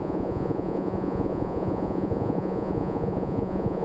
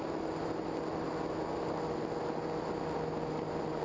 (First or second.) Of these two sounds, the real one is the second